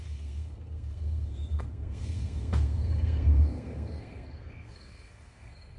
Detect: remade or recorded remade